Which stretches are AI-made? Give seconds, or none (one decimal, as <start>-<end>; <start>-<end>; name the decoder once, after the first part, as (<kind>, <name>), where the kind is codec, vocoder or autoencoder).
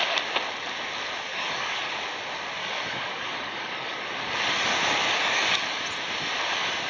1.3-1.9 (codec, DAC); 2.6-4.1; 5.0-5.8